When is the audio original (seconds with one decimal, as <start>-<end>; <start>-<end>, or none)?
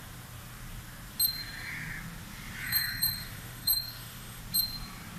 0.0-2.6; 4.4-5.2